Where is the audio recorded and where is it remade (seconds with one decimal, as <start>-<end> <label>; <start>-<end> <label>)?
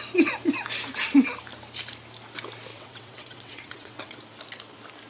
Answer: 0.0-2.7 recorded; 2.7-4.2 remade; 4.2-5.1 recorded